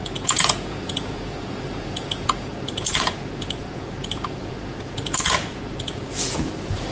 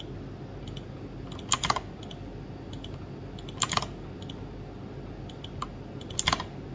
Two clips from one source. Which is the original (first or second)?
second